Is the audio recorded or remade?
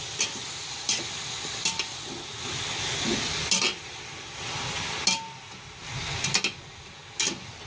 recorded